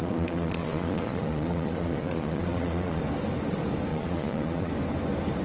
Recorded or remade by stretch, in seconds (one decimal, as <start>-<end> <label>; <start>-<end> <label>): 0.0-3.0 remade; 3.0-3.9 recorded; 3.9-4.7 remade; 4.7-5.4 recorded